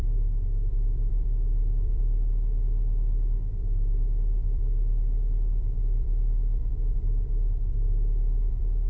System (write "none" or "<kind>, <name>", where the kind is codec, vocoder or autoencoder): vocoder, BigVGAN v2